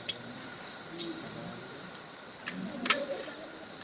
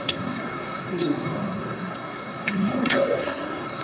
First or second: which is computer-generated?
second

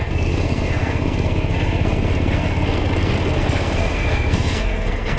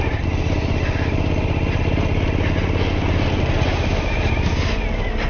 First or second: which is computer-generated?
first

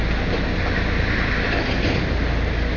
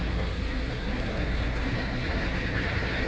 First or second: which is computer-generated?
second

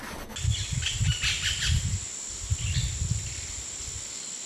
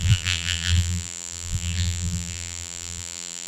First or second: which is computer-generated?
second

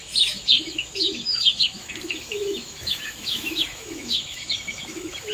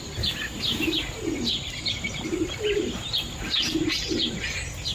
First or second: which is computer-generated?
first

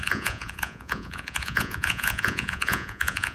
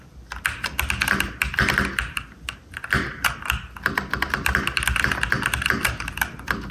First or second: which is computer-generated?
first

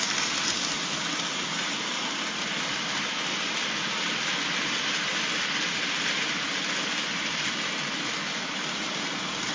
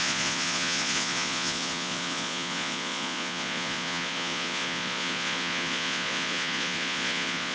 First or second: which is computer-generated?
second